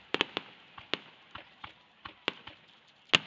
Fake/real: real